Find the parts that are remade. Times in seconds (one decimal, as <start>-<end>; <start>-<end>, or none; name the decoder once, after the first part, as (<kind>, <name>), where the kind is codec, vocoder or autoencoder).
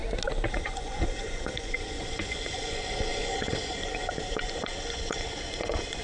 0.5-6.0 (vocoder, Vocos)